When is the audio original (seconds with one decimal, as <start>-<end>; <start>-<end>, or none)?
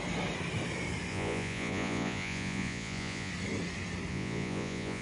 0.0-1.1; 3.3-4.1